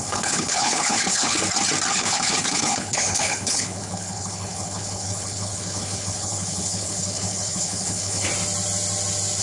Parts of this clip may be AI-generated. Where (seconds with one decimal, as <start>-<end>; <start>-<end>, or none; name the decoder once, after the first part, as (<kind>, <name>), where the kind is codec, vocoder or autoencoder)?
0.0-1.4 (codec, HILCodec); 1.9-8.3